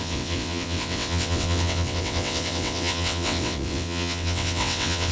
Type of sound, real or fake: fake